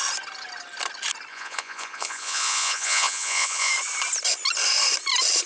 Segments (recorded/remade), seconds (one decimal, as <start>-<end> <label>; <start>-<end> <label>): 0.0-1.3 recorded; 1.3-3.7 remade; 3.7-5.5 recorded

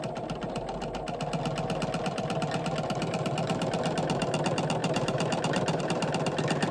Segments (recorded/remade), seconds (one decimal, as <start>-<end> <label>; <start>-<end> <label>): 0.0-4.8 recorded; 4.8-5.8 remade; 5.8-6.7 recorded